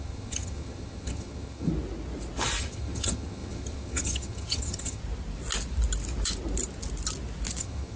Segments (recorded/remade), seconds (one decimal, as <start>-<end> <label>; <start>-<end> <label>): 0.0-1.7 remade; 1.7-2.6 recorded; 2.6-5.0 remade; 5.0-7.6 recorded; 7.6-8.0 remade